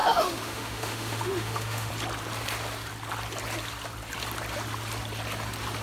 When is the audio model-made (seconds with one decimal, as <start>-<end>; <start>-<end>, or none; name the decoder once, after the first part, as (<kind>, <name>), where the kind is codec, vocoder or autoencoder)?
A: 0.0-1.9 (autoencoder, DAC-VAE)